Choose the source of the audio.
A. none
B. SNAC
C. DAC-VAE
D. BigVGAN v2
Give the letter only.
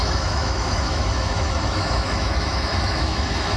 C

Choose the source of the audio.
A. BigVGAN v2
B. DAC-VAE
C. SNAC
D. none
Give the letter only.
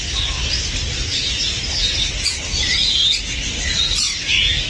D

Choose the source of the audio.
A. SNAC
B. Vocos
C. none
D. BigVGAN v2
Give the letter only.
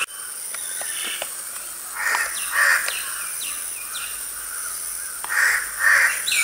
C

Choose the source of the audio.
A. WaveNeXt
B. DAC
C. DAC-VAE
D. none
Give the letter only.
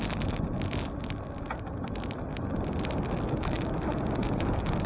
D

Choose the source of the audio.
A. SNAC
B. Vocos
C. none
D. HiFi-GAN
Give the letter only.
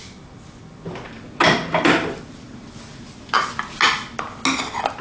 C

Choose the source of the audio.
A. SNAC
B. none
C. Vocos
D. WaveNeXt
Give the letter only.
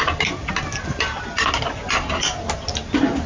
B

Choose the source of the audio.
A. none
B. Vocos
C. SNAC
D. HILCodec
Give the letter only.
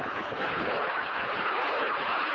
D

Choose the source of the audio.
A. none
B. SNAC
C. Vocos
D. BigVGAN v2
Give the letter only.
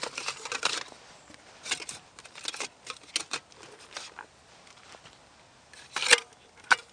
A